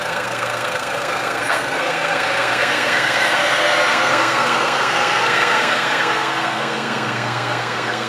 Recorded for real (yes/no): no